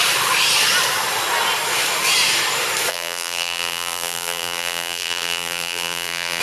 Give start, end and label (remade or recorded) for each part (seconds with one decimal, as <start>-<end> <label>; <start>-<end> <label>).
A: 0.0-2.9 recorded; 2.9-6.4 remade